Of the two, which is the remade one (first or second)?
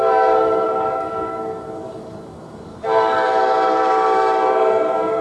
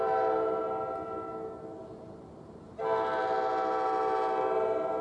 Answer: first